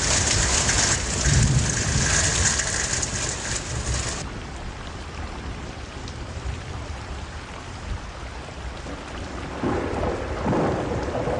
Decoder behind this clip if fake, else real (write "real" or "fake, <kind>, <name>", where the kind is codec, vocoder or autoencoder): real